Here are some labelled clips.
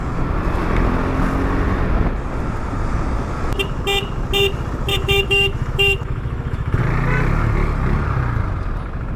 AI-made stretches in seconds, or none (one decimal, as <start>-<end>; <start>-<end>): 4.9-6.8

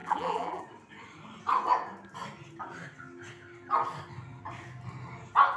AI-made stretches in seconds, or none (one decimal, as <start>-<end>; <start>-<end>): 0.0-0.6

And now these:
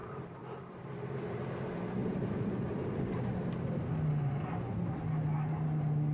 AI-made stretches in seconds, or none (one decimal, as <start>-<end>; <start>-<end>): 0.0-0.9; 2.0-2.8